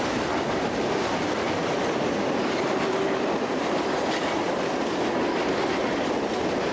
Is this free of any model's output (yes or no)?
yes